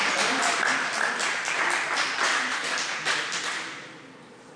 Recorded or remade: recorded